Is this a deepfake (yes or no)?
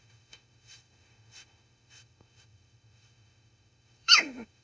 yes